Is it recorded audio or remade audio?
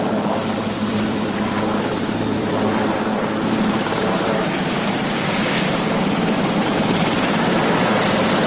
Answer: remade